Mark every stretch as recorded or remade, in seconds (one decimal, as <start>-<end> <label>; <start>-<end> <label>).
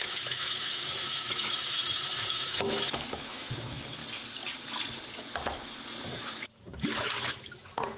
0.0-4.0 remade; 4.0-6.1 recorded; 6.1-8.0 remade